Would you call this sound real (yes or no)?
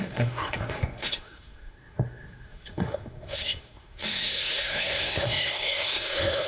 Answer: no